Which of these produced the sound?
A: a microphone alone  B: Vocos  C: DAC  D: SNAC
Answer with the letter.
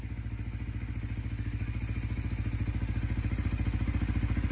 A